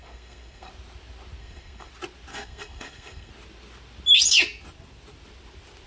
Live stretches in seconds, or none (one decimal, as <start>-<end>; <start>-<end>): 0.7-1.4; 1.9-2.3; 3.3-5.9